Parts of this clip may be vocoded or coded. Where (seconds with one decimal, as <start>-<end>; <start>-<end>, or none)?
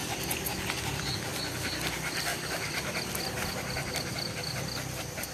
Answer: 0.8-1.3; 1.9-5.3